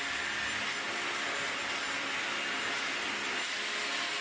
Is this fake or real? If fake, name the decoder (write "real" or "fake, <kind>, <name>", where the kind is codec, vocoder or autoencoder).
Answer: real